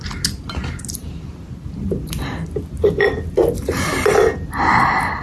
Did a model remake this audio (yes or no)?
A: no